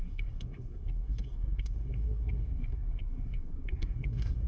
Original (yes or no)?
no